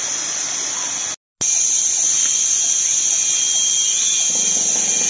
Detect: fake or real real